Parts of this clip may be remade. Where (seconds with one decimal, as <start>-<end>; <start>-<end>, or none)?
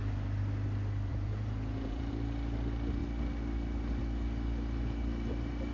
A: 1.1-2.1